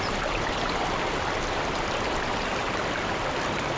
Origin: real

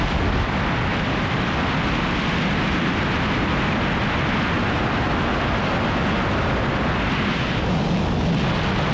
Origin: real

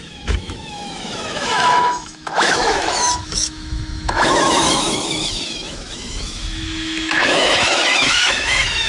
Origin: fake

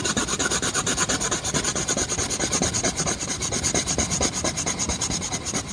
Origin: real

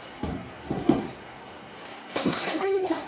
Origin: fake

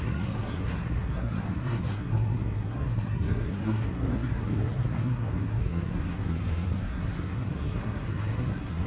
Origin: fake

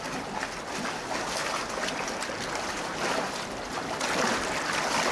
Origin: real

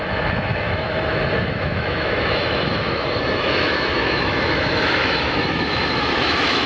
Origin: fake